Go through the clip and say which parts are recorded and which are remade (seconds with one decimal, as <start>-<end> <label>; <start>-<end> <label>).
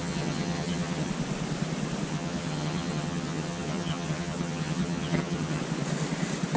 0.0-1.1 remade; 1.1-2.1 recorded; 2.1-5.6 remade; 5.6-6.6 recorded